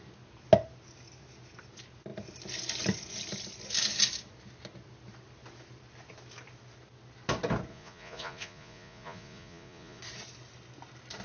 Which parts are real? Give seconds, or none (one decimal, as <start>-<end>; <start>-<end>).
0.0-7.7; 10.0-11.2